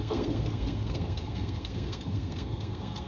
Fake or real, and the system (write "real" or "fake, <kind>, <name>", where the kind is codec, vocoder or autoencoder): fake, codec, SNAC